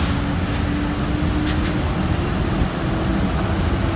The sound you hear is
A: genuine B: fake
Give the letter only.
A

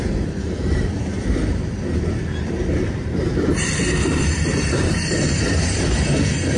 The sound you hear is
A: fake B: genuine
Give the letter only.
A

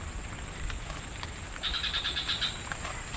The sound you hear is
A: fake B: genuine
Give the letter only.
A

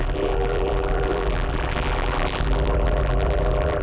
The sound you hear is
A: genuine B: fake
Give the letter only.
B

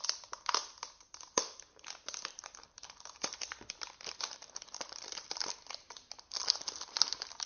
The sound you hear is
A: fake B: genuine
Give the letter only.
A